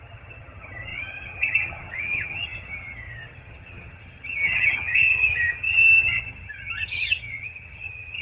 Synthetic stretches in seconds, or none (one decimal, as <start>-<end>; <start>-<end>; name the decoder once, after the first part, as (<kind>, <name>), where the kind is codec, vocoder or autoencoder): 0.0-8.2 (vocoder, HiFi-GAN)

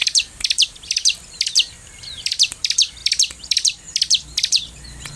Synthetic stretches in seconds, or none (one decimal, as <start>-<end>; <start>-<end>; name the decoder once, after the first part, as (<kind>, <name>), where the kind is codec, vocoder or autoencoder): 0.0-5.2 (vocoder, BigVGAN v2)

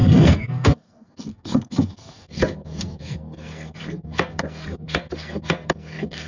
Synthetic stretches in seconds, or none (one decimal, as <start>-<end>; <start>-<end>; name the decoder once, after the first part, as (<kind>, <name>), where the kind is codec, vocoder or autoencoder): 0.0-6.3 (codec, SNAC)

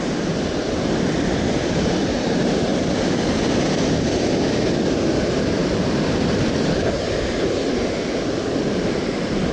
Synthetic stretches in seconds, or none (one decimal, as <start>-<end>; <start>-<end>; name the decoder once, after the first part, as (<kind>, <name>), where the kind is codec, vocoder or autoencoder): 0.0-2.7 (vocoder, BigVGAN v2); 6.5-9.5

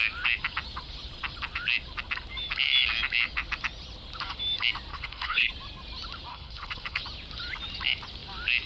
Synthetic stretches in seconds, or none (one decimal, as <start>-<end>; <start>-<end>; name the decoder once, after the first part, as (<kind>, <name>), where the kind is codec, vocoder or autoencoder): 4.9-5.5 (codec, HILCodec); 6.3-7.0